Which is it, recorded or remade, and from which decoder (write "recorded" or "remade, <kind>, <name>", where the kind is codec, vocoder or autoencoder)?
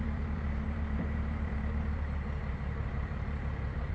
remade, vocoder, BigVGAN v2